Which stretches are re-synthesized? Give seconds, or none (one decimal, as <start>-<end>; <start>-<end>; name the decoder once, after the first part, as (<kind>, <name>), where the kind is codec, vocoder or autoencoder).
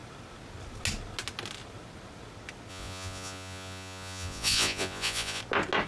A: 2.7-5.4 (vocoder, Vocos)